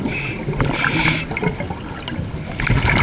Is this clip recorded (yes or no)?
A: yes